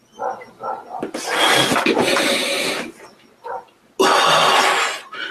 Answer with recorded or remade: recorded